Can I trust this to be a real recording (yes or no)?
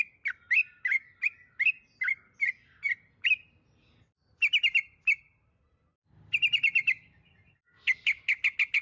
yes